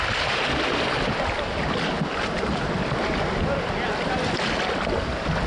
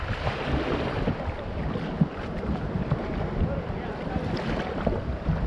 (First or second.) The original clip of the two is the first